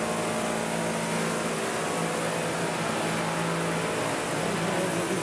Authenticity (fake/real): real